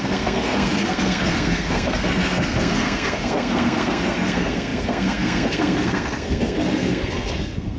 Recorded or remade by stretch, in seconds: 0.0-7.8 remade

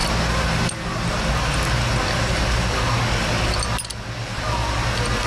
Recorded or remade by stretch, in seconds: 0.0-5.3 recorded

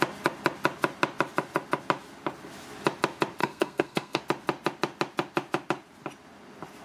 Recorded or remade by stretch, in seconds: 0.0-3.4 recorded; 3.4-4.2 remade; 4.2-6.8 recorded

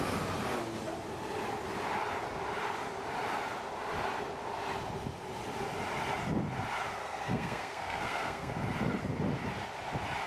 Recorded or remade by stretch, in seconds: 0.0-7.0 recorded; 7.0-8.5 remade; 8.5-10.3 recorded

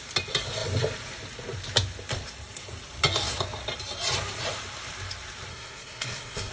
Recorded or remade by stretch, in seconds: 0.0-5.5 recorded; 5.5-6.5 remade